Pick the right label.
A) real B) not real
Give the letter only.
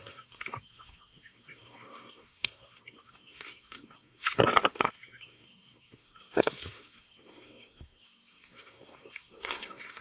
B